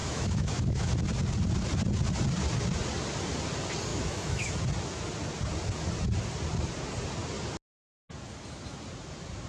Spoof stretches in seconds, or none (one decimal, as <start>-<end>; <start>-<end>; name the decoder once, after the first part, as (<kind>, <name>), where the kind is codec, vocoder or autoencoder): 0.0-0.9 (autoencoder, DAC-VAE); 3.9-4.5